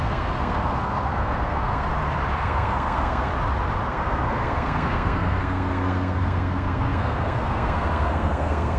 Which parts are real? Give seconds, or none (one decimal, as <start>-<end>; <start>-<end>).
1.9-2.4; 3.3-3.9